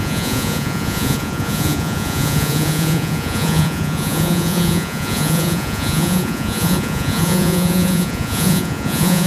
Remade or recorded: remade